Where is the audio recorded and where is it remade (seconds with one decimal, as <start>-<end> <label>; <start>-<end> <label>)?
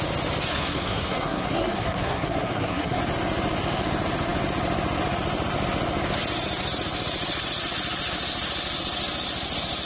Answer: 0.0-0.5 recorded; 0.5-3.0 remade; 3.0-9.9 recorded